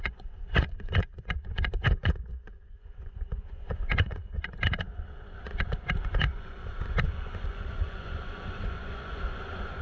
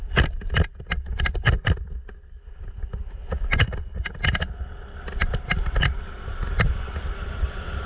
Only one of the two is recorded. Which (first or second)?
second